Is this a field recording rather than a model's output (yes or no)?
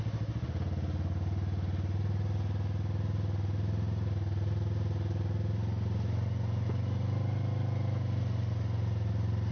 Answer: yes